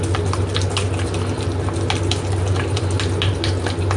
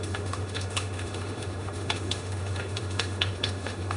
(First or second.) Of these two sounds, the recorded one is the first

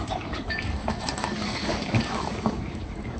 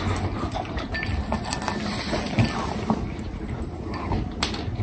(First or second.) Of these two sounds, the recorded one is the second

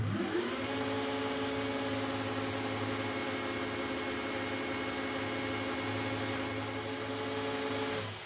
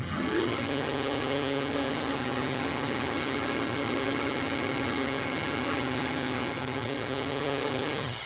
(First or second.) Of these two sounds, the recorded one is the first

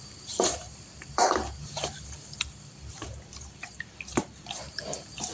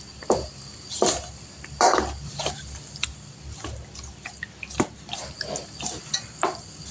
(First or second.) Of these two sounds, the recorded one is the second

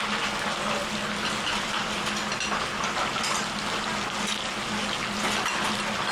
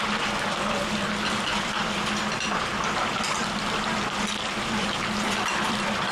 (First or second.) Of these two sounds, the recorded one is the first